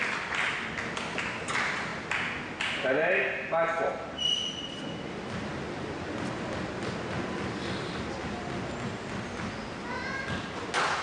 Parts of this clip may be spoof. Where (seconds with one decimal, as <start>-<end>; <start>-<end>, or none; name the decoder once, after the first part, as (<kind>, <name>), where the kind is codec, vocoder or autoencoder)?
none